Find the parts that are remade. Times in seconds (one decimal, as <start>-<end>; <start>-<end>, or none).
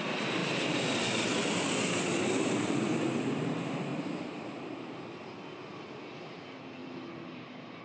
none